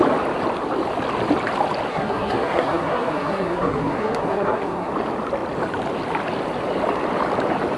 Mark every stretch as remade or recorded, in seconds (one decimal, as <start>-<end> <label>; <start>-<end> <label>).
0.0-1.9 recorded; 1.9-4.9 remade; 4.9-7.8 recorded